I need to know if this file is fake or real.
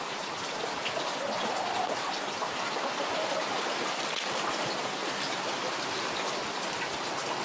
real